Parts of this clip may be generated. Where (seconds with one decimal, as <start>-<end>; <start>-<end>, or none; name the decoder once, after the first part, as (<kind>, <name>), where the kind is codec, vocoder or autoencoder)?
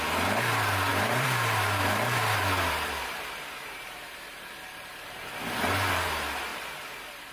0.0-6.5 (vocoder, BigVGAN v2)